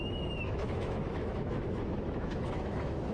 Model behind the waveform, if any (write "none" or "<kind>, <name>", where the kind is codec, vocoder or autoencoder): autoencoder, DAC-VAE